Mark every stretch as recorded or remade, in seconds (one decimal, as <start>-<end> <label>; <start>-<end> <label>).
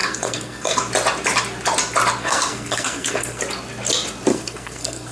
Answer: 0.0-0.8 remade; 0.8-2.2 recorded; 2.2-3.4 remade; 3.4-4.3 recorded; 4.3-5.1 remade